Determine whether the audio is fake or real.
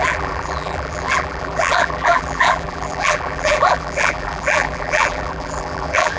fake